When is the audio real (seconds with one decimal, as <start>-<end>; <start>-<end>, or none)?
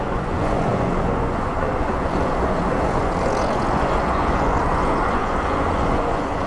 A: none